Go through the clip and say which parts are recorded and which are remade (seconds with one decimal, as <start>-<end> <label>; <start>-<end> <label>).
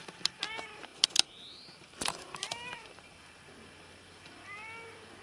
0.0-5.2 recorded